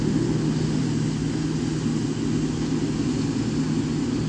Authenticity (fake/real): real